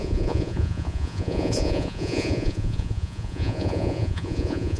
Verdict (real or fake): fake